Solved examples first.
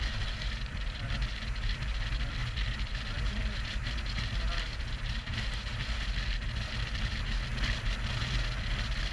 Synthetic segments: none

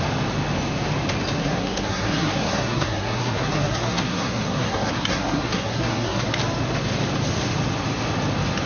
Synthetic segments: 1.4-6.3 (codec, SNAC)